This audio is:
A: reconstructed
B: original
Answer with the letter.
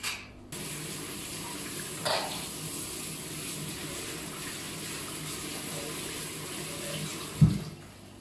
B